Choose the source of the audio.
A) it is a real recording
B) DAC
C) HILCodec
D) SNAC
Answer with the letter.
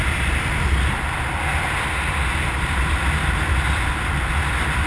A